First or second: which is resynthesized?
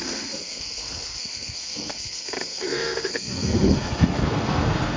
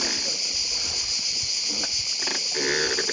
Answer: first